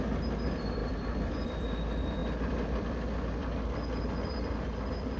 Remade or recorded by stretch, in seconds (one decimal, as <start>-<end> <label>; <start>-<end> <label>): 0.0-5.2 remade

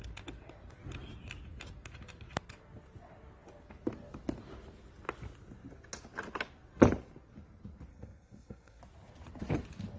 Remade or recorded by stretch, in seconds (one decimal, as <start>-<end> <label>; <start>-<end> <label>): 0.0-7.9 recorded; 7.9-8.8 remade; 8.8-10.0 recorded

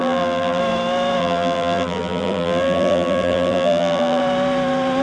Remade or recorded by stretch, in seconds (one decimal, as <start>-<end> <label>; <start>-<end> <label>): 0.0-0.6 remade; 0.6-1.2 recorded; 1.2-4.2 remade; 4.2-5.0 recorded

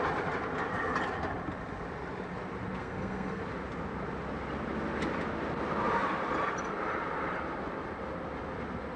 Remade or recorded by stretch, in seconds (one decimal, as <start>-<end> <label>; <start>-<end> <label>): 0.0-2.8 recorded; 2.8-3.4 remade; 3.4-9.0 recorded

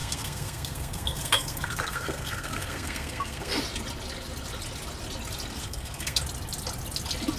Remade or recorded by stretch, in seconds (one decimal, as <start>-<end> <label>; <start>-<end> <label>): 0.0-3.6 remade; 3.6-5.6 recorded; 5.6-6.2 remade; 6.2-7.4 recorded

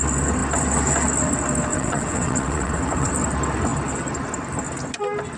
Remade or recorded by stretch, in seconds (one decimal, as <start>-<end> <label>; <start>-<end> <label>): 0.0-1.7 recorded; 1.7-3.1 remade; 3.1-5.4 recorded

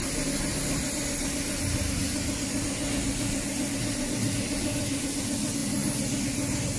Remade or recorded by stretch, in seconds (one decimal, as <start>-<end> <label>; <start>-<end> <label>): 0.0-6.8 recorded